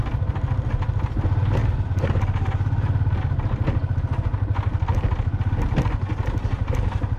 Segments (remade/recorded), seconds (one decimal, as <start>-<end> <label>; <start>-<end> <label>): 0.0-7.2 recorded